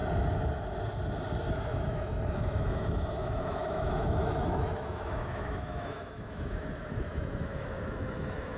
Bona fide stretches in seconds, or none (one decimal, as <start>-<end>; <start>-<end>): 0.0-1.5